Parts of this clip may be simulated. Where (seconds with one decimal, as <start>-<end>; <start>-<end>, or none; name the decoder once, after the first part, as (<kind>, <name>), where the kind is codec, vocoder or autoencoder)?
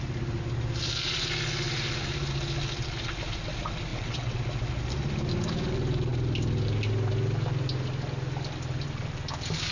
3.9-4.4 (vocoder, WaveNeXt)